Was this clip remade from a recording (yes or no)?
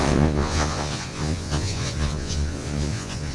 yes